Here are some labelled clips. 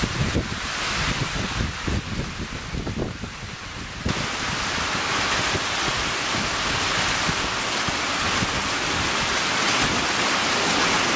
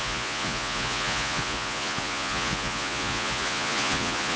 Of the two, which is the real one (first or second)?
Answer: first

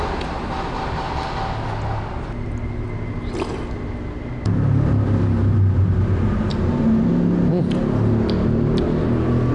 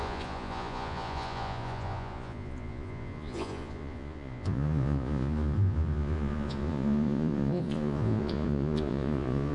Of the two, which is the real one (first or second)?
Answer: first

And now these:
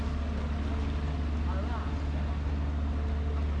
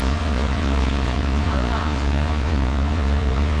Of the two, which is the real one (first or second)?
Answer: first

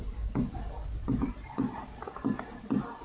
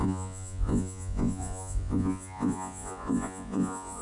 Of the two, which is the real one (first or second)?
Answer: first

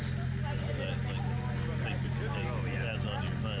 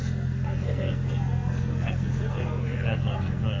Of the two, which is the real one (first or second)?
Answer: first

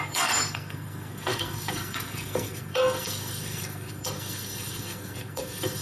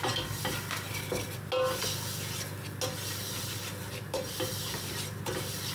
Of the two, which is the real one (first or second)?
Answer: second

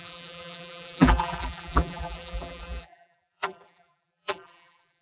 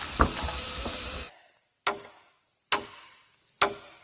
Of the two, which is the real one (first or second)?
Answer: second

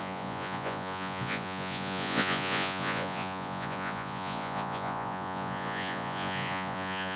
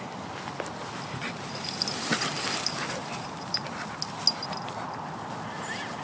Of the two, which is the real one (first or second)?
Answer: second